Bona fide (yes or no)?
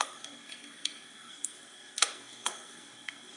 no